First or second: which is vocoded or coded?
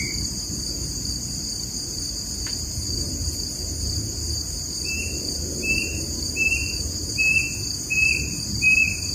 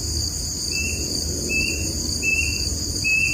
first